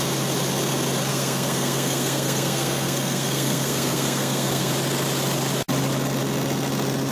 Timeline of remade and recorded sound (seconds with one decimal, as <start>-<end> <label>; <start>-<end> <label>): 0.0-1.1 recorded; 1.1-4.7 remade; 4.7-7.1 recorded